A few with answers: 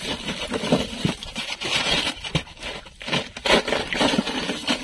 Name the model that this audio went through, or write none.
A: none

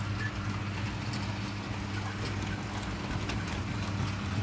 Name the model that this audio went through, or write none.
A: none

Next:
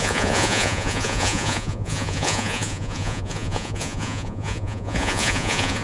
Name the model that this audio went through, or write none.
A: vocoder, Vocos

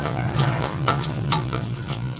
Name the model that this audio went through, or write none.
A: vocoder, Vocos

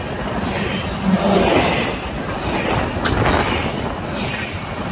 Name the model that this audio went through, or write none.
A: none